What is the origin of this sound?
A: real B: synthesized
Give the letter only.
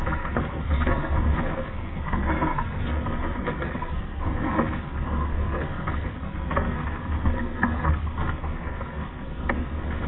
B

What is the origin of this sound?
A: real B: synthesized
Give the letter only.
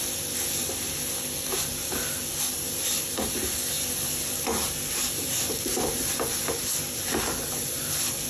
A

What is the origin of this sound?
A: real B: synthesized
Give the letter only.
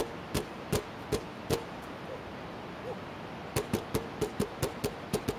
A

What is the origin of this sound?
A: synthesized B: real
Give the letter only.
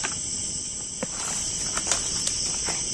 B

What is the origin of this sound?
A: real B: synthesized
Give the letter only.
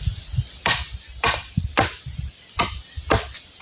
A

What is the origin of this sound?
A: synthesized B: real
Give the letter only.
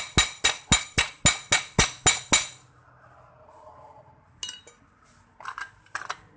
B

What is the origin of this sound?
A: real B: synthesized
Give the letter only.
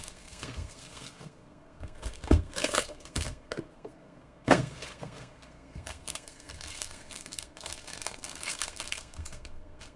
B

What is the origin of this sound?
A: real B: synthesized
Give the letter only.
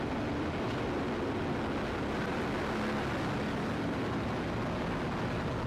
A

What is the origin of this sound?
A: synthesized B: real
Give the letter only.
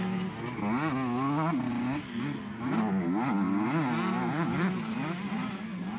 B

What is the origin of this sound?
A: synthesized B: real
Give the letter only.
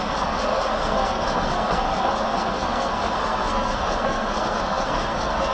A